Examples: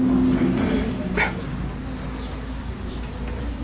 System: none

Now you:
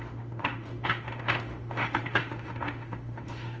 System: autoencoder, DAC-VAE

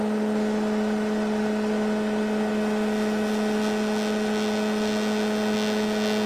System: none